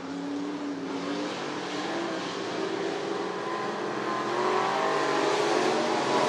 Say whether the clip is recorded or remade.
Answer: recorded